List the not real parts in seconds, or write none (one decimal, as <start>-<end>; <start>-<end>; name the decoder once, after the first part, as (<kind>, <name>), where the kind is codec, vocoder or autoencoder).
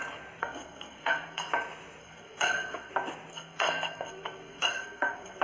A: 0.4-1.5 (codec, SNAC); 2.0-2.9; 3.3-5.4